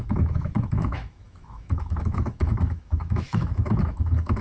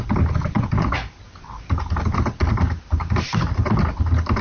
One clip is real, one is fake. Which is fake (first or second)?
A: first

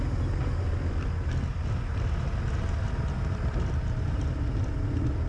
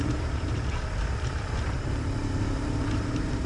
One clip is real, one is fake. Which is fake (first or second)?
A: second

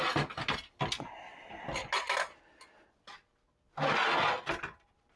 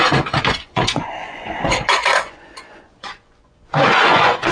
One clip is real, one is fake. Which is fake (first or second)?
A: second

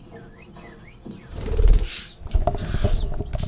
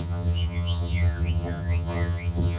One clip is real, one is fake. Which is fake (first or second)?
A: second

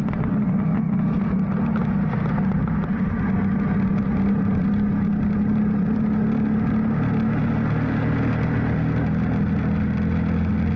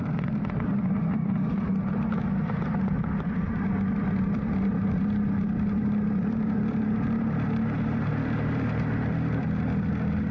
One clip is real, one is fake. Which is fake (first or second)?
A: second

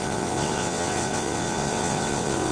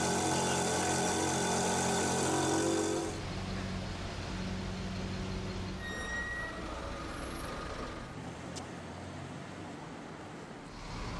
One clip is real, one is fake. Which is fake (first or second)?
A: first